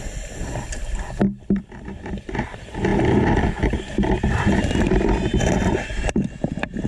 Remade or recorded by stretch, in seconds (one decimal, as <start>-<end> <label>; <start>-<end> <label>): 0.0-6.9 remade